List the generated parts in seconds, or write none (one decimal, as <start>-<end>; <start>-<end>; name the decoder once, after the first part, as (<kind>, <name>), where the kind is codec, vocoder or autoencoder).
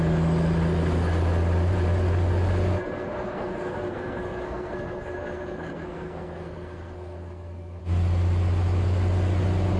2.8-7.8 (codec, SNAC)